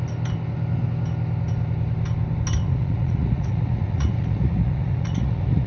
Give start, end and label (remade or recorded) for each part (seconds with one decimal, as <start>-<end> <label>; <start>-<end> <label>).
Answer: 0.0-2.6 recorded; 2.6-5.7 remade